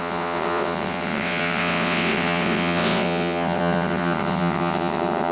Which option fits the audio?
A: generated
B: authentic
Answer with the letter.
A